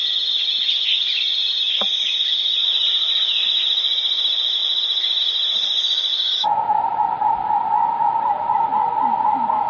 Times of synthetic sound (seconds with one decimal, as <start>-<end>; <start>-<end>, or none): 0.0-4.6; 5.2-6.1; 8.2-9.7